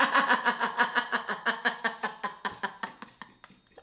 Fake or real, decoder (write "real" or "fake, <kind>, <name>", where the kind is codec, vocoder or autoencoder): real